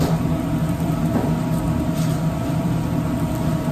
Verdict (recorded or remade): recorded